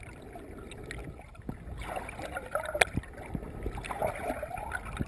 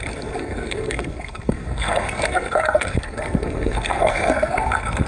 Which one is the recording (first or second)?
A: first